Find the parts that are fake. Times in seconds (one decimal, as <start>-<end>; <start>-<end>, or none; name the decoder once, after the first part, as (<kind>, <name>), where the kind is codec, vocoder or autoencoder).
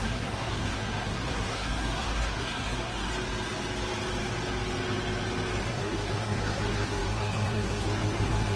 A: 0.0-3.1 (codec, SNAC); 5.6-8.6